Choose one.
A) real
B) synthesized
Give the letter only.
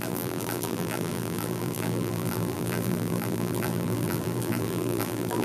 B